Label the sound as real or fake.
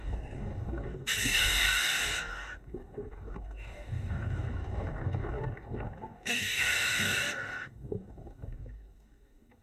fake